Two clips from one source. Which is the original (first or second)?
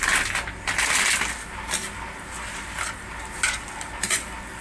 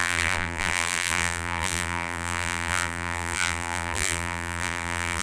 first